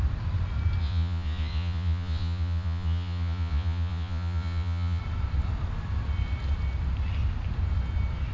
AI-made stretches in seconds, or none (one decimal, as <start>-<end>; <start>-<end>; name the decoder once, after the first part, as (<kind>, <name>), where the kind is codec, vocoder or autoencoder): 0.8-5.0 (vocoder, Vocos)